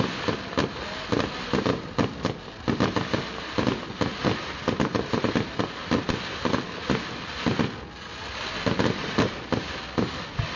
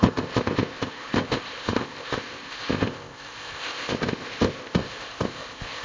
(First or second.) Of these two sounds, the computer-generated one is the second